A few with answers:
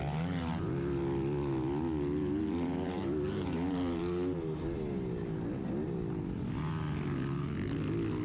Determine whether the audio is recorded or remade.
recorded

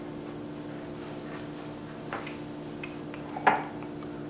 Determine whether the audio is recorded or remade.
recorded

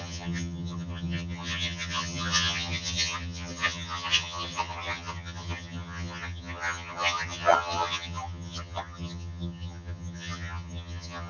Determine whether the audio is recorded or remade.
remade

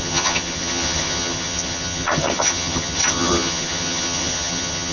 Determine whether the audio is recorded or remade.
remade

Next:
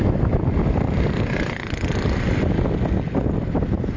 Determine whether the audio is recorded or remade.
recorded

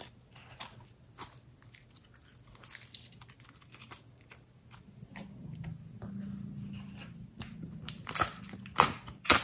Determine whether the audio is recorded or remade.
recorded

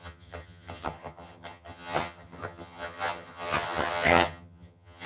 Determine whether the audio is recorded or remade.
remade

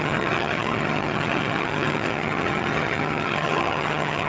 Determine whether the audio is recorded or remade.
remade